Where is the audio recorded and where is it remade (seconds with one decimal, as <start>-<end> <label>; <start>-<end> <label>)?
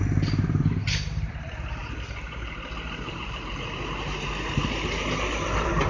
0.0-1.8 remade; 1.8-5.3 recorded; 5.3-5.9 remade